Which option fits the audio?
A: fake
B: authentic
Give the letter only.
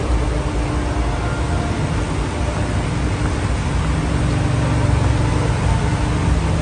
B